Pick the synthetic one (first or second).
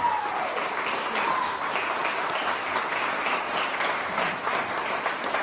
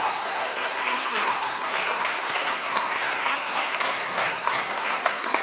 second